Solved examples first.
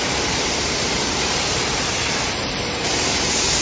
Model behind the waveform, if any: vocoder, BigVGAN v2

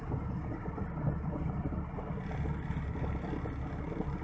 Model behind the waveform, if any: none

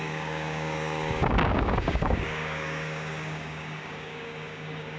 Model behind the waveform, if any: codec, DAC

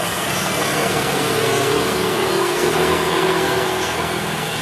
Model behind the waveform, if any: codec, SNAC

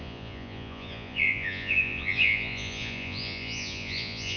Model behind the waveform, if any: vocoder, Vocos